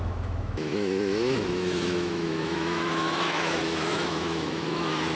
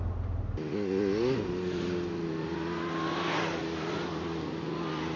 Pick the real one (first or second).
second